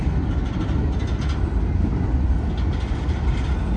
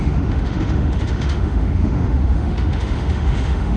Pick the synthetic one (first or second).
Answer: second